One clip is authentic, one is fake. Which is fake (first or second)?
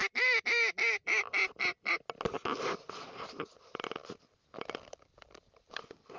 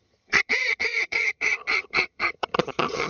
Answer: second